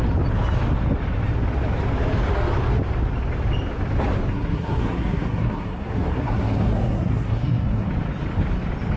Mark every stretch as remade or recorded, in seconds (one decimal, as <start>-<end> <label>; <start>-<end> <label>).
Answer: 0.0-4.3 recorded; 4.3-7.9 remade; 7.9-9.0 recorded